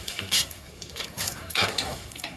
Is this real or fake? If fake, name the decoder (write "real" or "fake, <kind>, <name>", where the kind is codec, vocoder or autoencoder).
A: fake, codec, SNAC